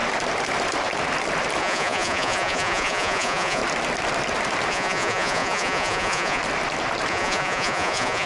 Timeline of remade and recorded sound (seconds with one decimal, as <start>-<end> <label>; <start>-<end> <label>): 0.0-1.6 recorded; 1.6-3.6 remade; 3.6-4.7 recorded; 4.7-6.4 remade; 6.4-7.1 recorded; 7.1-8.3 remade